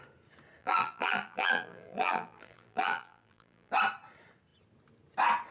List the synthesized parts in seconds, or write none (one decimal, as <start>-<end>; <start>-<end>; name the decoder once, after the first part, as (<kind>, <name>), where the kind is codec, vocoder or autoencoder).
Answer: 0.6-3.7 (vocoder, BigVGAN v2)

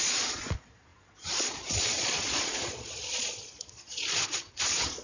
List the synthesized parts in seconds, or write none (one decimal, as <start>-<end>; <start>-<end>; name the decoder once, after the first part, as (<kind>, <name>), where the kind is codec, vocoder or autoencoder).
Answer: 0.0-5.0 (vocoder, Vocos)